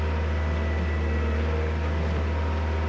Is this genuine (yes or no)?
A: yes